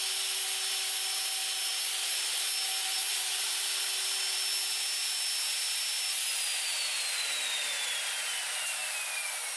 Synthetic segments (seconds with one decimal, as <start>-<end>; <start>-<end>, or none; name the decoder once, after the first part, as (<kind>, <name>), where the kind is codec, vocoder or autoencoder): none